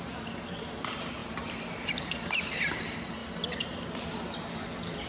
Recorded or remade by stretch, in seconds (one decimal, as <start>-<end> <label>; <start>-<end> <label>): 0.0-3.2 remade; 3.2-5.1 recorded